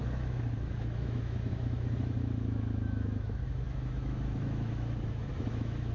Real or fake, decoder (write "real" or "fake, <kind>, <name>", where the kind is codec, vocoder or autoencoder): fake, autoencoder, DAC-VAE